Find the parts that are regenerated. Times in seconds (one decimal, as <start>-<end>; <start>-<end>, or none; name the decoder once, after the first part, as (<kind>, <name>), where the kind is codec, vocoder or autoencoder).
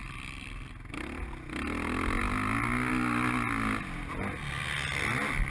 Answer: none